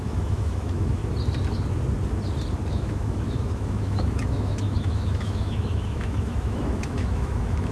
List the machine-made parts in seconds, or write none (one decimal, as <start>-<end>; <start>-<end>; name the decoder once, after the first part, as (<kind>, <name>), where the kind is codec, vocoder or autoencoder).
0.0-1.0 (autoencoder, DAC-VAE); 2.7-7.7